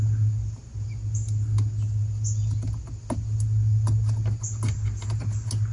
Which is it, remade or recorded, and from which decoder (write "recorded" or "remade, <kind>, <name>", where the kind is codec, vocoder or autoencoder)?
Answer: recorded